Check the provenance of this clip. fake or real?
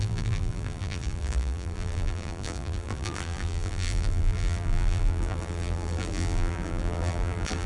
fake